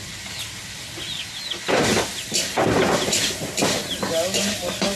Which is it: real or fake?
real